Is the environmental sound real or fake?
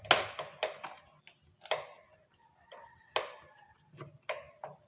real